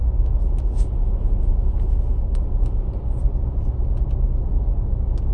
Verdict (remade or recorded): recorded